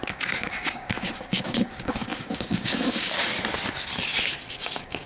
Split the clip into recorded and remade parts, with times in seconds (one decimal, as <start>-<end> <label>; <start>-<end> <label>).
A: 0.0-3.3 remade; 3.3-4.5 recorded; 4.5-5.1 remade